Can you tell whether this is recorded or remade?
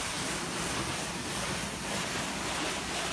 recorded